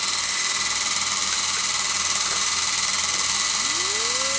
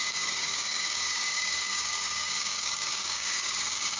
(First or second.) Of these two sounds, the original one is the first